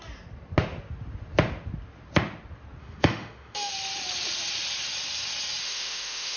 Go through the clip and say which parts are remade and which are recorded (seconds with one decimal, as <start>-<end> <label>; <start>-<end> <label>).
0.0-2.8 recorded; 2.8-3.7 remade; 3.7-5.6 recorded; 5.6-6.4 remade